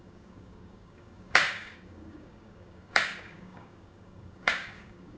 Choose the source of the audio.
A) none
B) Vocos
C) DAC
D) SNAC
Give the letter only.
C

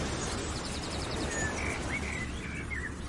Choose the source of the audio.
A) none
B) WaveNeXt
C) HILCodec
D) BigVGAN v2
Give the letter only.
A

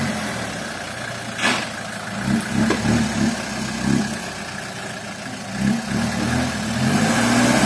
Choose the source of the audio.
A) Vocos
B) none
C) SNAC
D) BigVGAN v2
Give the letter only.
B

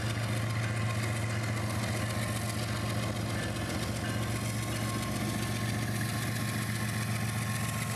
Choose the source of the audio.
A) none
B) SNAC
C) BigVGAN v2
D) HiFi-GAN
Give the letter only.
A